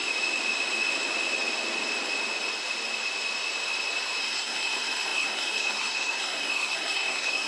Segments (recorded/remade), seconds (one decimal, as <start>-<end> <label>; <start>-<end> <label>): 0.0-4.2 recorded; 4.2-7.5 remade